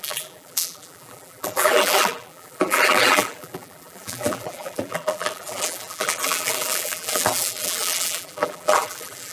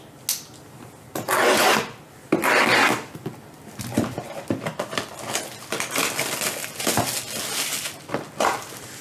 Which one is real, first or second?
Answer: second